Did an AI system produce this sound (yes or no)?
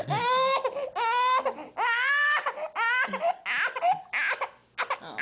no